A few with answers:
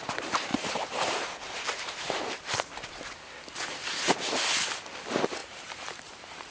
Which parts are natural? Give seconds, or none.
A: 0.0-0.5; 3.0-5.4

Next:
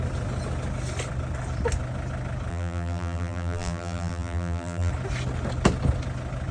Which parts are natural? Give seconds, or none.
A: 0.0-2.5; 4.9-6.5